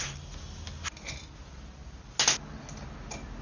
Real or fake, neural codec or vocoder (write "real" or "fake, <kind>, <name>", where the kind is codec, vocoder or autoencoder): real